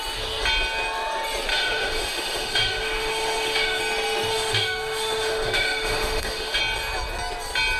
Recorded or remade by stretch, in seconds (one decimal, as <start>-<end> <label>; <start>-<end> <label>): 0.0-1.5 recorded; 1.5-3.8 remade; 3.8-4.3 recorded; 4.3-6.6 remade; 6.6-7.8 recorded